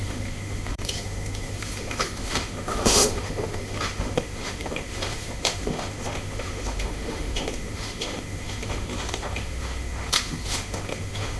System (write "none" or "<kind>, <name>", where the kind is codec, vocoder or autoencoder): autoencoder, DAC-VAE